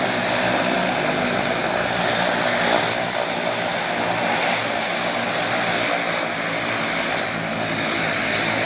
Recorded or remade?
recorded